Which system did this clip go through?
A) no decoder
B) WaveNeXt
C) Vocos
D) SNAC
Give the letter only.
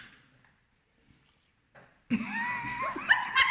A